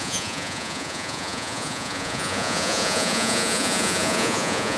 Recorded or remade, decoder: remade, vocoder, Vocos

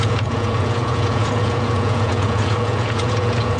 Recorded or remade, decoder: remade, vocoder, Vocos